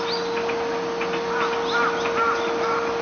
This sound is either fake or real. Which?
real